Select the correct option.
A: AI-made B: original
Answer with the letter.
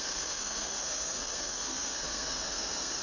A